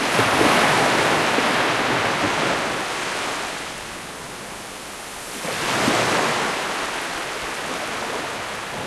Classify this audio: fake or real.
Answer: real